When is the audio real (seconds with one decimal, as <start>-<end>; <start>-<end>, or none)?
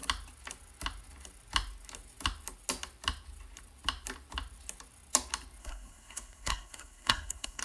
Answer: 0.0-5.6